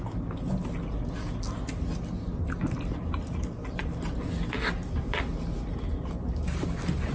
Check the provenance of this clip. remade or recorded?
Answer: recorded